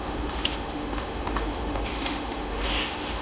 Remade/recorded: remade